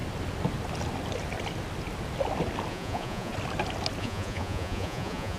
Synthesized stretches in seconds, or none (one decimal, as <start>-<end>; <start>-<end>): 2.7-3.3; 4.0-5.4